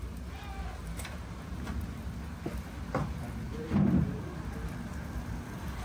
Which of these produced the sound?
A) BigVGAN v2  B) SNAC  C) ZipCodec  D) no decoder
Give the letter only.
D